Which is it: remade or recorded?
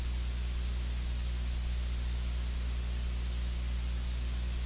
recorded